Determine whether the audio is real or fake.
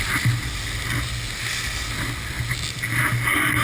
real